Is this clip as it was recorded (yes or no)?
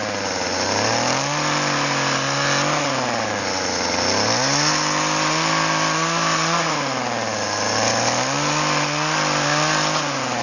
yes